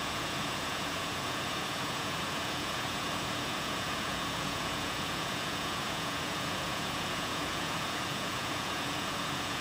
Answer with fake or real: fake